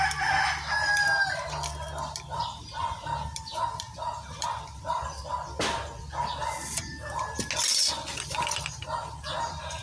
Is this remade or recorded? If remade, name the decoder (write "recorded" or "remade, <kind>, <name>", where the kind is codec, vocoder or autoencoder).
recorded